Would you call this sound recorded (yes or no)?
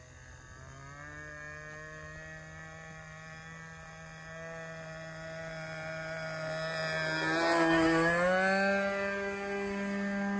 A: yes